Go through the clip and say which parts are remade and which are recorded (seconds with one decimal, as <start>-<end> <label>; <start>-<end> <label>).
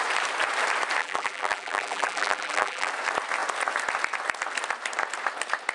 0.0-1.0 recorded; 1.0-2.9 remade; 2.9-5.7 recorded